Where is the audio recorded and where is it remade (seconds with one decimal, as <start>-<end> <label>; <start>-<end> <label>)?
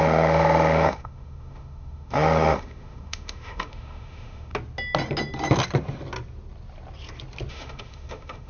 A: 0.0-4.5 remade; 4.5-7.5 recorded; 7.5-8.5 remade